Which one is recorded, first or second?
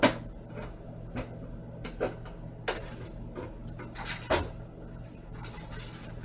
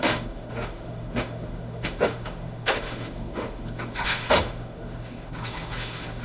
first